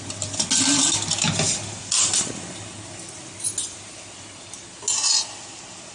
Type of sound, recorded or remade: recorded